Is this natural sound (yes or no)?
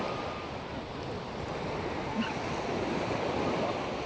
yes